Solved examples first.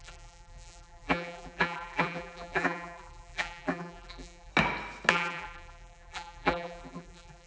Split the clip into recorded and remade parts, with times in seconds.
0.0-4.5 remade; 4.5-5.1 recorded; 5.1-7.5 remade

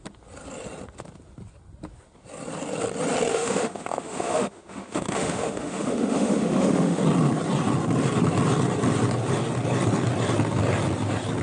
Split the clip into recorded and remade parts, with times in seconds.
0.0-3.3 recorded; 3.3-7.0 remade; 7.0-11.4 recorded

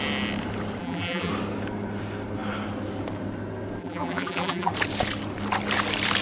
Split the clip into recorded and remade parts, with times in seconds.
0.0-0.8 recorded; 0.8-1.3 remade; 1.3-3.8 recorded; 3.8-4.7 remade; 4.7-6.2 recorded

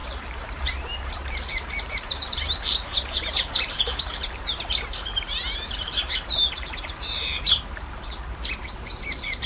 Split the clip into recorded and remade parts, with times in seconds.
0.0-8.0 remade; 8.0-8.6 recorded; 8.6-9.5 remade

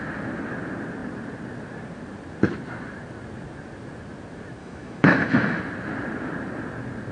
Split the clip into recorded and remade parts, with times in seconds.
0.0-4.6 recorded; 4.6-5.6 remade; 5.6-7.1 recorded